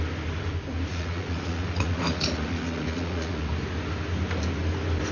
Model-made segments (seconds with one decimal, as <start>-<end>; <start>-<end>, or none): 0.9-3.5